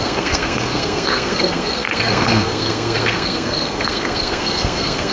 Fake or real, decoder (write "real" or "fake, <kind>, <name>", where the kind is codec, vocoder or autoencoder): fake, codec, SNAC